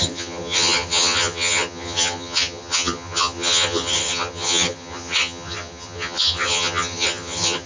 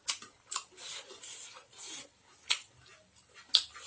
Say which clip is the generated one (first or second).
first